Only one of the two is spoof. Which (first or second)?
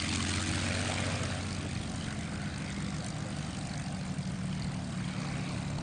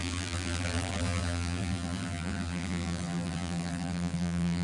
second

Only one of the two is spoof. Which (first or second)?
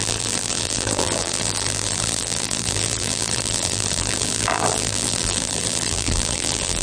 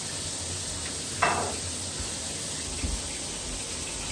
first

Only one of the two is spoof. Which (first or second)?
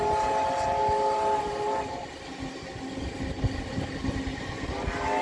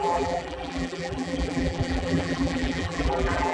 second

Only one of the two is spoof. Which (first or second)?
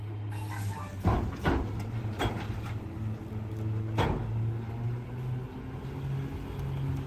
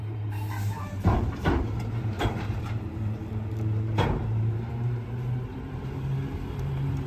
second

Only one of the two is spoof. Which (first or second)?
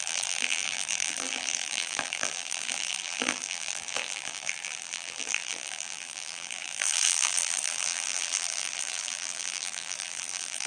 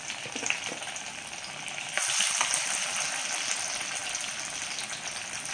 first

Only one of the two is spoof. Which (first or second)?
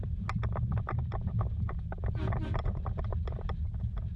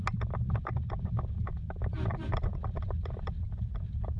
second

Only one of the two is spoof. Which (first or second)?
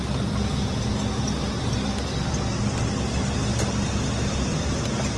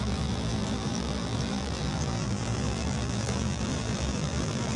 second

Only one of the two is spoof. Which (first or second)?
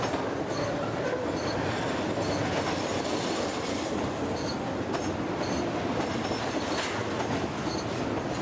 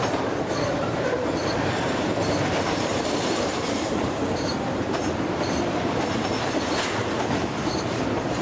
second